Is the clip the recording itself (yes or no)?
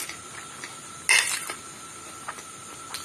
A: yes